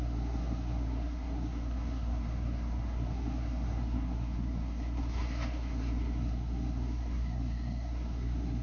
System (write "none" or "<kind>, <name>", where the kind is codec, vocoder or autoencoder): codec, SNAC